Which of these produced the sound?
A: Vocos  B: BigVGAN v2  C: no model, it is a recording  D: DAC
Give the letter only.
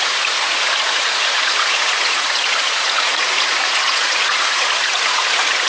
A